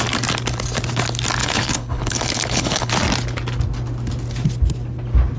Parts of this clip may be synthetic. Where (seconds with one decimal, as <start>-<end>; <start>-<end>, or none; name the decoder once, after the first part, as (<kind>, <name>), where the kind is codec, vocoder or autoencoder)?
1.4-2.9 (codec, HILCodec)